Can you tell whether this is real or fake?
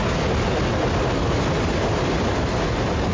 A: real